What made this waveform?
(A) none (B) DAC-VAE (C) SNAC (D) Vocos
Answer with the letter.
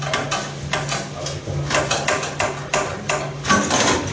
A